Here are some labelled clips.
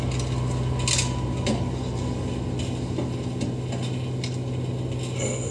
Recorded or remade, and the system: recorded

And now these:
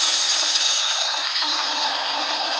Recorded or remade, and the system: remade, codec, SNAC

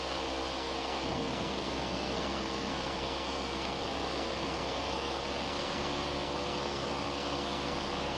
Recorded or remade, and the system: remade, codec, SNAC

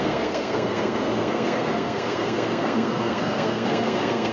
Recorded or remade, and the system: remade, codec, SNAC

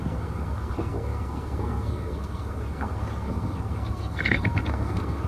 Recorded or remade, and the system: remade, codec, SNAC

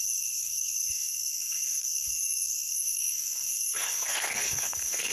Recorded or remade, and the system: remade, codec, SNAC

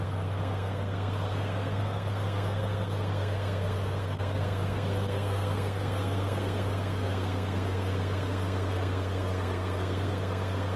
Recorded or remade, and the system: remade, codec, SNAC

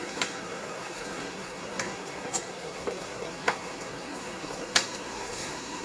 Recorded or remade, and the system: remade, codec, SNAC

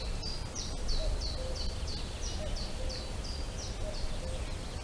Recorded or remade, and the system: recorded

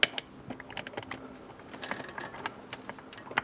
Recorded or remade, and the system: recorded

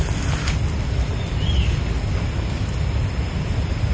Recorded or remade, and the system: recorded